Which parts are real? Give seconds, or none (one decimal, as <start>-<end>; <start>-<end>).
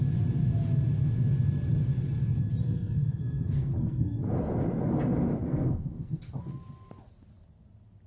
0.0-2.6; 4.3-5.5; 6.3-8.1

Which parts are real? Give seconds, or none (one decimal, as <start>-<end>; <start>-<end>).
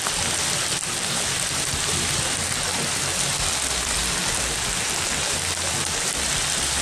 none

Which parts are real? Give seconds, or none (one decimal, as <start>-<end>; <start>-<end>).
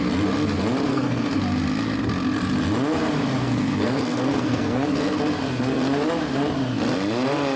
0.0-0.9; 1.4-3.4; 5.2-7.6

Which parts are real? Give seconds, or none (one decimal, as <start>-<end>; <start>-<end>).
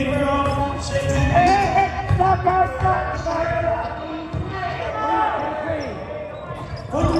0.0-0.6; 4.9-7.2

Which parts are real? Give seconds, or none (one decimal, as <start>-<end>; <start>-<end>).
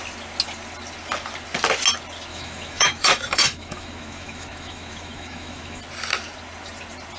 0.0-2.3; 5.8-7.2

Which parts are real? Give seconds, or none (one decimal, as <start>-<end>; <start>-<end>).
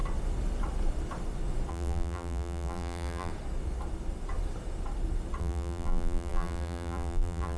0.0-1.7; 3.3-5.4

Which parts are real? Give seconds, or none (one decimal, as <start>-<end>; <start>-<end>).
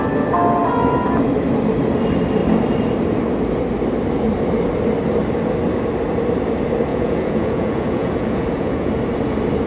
0.0-6.9; 8.9-9.7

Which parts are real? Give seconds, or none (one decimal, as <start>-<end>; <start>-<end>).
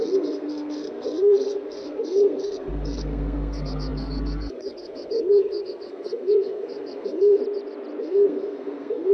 7.4-8.0